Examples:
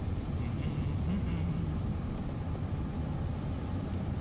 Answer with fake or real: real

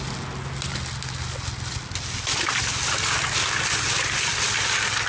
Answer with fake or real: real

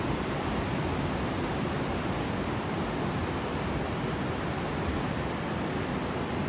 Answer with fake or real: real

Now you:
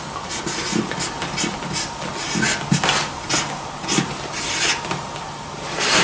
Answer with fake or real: real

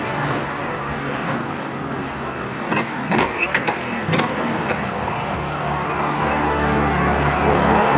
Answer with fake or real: fake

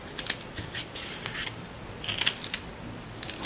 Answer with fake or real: real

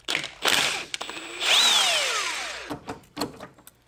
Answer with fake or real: real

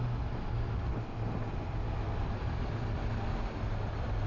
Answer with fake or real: real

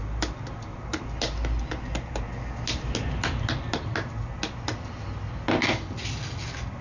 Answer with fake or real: real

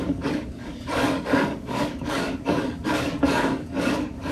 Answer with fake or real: fake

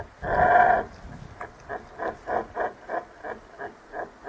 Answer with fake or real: real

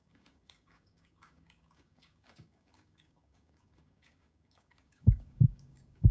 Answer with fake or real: fake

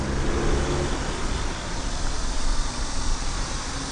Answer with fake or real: real